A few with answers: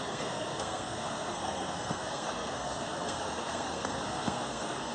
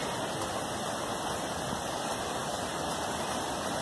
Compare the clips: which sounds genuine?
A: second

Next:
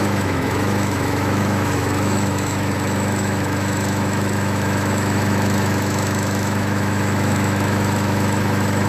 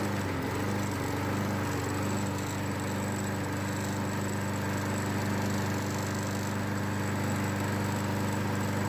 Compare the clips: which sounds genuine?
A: second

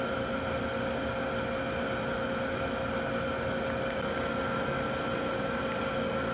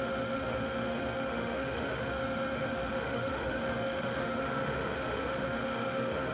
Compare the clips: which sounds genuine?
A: first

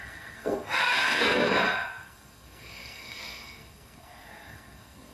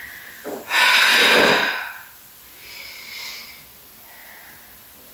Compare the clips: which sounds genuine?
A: second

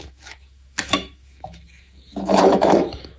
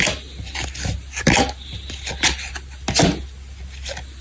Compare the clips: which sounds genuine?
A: second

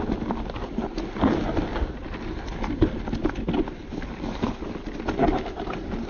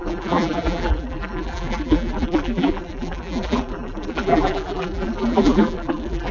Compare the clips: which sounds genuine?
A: first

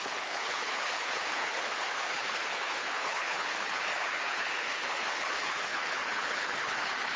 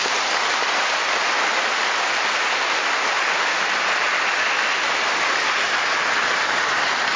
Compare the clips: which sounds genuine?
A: second